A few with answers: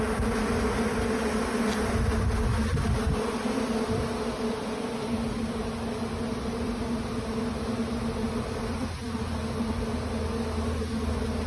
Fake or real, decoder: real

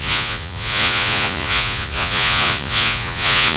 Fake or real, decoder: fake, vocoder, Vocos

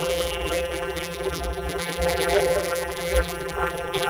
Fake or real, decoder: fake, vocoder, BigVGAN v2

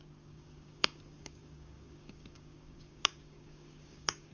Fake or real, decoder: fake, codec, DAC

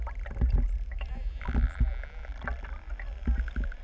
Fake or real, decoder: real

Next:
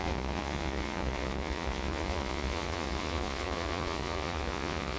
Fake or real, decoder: fake, vocoder, Vocos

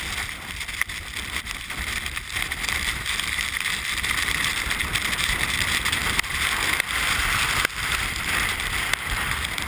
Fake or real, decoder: fake, vocoder, BigVGAN v2